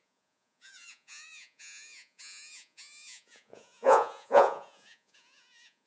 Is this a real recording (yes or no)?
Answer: no